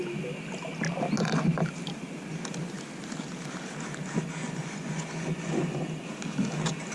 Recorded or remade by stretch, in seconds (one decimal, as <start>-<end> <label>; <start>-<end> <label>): 0.0-4.4 recorded; 4.4-5.8 remade; 5.8-6.9 recorded